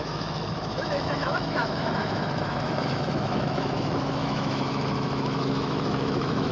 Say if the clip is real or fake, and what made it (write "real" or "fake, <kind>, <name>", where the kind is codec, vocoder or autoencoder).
fake, autoencoder, DAC-VAE